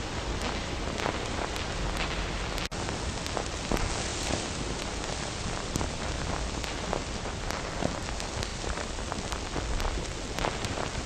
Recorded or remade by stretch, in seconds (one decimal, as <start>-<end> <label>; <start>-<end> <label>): 0.0-4.1 recorded; 4.1-7.7 remade; 7.7-8.5 recorded; 8.5-9.1 remade; 9.1-11.1 recorded